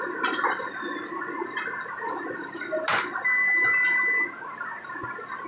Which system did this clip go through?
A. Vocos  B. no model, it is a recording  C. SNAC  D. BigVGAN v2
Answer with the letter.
B